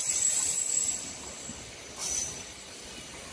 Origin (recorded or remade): recorded